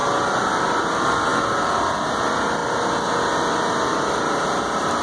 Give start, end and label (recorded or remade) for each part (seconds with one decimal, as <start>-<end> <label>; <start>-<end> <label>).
0.0-5.0 recorded